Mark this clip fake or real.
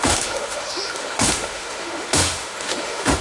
fake